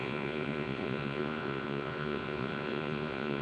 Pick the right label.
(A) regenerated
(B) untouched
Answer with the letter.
A